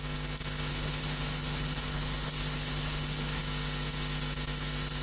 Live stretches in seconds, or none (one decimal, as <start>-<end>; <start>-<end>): 0.0-0.7; 3.4-5.0